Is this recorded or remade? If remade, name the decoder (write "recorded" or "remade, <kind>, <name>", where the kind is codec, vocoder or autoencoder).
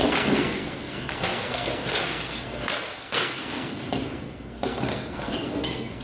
remade, codec, SNAC